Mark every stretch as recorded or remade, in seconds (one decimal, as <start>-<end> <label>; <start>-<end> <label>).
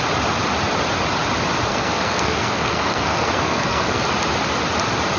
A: 0.0-1.7 recorded; 1.7-4.0 remade; 4.0-5.2 recorded